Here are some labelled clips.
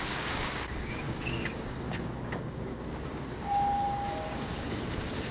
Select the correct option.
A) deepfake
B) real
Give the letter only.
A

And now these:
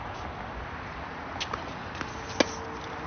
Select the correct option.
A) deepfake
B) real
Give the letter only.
B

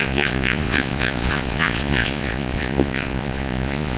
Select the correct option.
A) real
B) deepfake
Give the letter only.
B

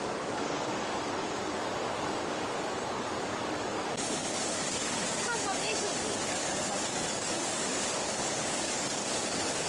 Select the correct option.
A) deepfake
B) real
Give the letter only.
A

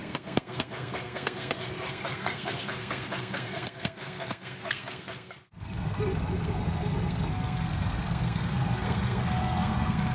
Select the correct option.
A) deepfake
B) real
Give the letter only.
A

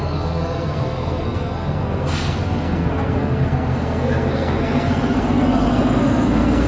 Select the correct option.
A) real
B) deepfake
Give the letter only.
B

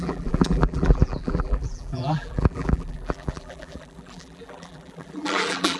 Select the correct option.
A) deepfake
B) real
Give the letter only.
A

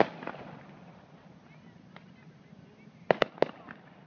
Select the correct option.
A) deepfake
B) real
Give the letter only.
B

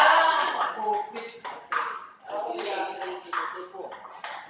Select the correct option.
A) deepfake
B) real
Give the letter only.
B